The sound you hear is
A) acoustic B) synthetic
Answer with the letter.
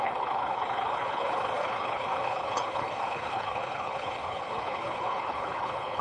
B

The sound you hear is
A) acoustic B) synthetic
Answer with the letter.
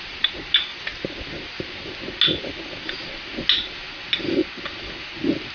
A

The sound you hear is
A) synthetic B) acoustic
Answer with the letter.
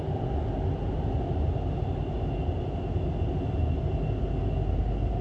B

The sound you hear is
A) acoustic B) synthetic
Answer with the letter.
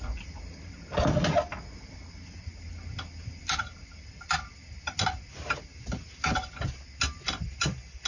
A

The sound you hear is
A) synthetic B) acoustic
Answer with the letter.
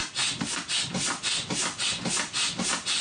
B